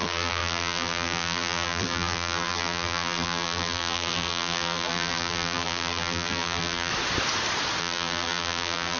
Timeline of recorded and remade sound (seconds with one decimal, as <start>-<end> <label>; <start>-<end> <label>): 0.0-6.9 remade; 6.9-7.8 recorded; 7.8-9.0 remade